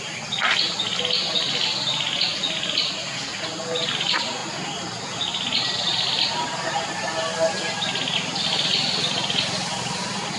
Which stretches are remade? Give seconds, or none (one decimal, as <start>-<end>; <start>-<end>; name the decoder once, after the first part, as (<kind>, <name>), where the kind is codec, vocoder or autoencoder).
none